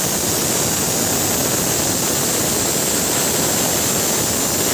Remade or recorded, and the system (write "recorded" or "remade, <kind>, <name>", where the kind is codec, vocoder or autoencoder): recorded